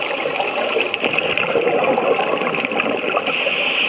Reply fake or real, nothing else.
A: real